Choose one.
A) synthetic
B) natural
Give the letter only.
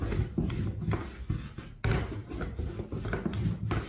B